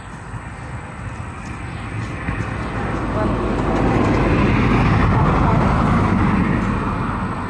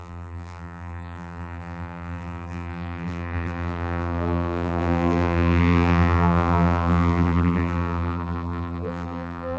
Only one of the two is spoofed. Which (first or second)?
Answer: second